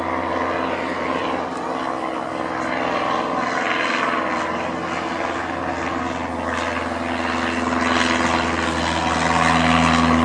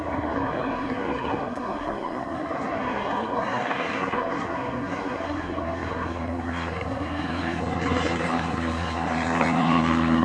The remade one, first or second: second